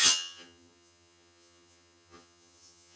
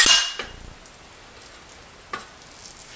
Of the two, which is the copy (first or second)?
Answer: first